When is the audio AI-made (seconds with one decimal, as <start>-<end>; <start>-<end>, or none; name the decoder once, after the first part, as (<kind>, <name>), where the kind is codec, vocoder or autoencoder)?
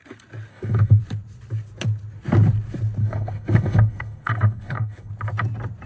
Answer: 0.5-1.0 (codec, SNAC); 3.0-5.1